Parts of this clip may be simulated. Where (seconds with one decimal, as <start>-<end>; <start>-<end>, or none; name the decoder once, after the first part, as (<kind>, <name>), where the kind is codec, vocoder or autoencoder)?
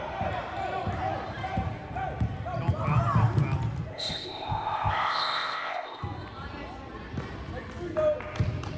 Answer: 3.9-6.0 (codec, ZipCodec)